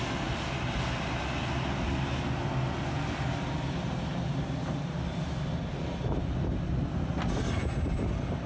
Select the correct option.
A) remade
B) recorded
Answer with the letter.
B